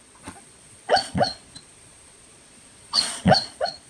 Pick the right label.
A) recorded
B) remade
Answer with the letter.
B